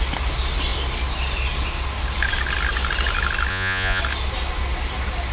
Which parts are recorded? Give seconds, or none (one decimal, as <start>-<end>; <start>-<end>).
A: 0.0-3.5; 4.0-5.3